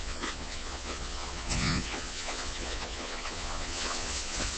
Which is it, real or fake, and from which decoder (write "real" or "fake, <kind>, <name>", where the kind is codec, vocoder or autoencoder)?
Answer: fake, vocoder, Vocos